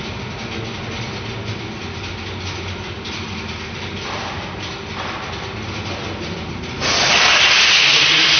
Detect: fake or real real